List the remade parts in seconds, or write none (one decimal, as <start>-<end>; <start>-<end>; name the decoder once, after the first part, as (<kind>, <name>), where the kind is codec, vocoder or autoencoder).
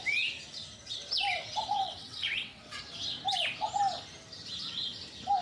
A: 1.7-2.8 (vocoder, WaveNeXt)